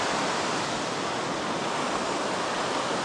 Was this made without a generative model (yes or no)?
yes